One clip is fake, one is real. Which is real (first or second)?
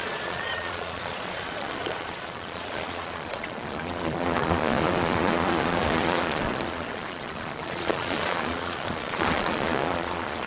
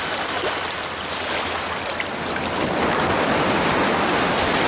second